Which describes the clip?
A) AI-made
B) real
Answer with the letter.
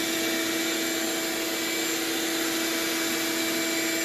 B